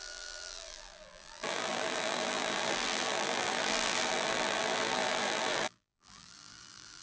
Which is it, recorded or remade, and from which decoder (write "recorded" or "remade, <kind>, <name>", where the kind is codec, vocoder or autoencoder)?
remade, vocoder, BigVGAN v2